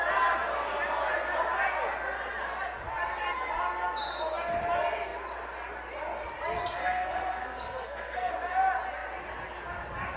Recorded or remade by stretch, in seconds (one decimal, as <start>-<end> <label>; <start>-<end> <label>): 0.0-6.8 recorded; 6.8-8.3 remade; 8.3-10.2 recorded